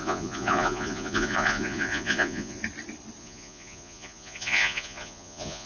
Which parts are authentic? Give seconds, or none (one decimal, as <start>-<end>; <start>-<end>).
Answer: 2.6-3.2